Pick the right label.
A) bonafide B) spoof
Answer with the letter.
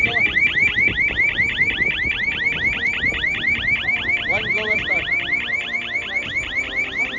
B